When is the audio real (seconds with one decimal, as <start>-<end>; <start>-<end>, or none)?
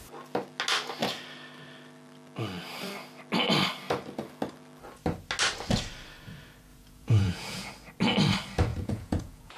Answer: 0.0-6.7; 7.7-8.7